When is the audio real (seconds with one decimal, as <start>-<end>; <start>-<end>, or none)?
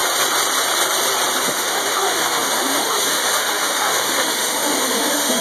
0.0-1.4